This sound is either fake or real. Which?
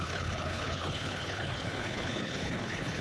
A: fake